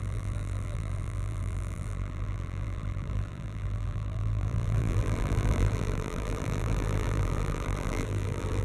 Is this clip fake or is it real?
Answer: fake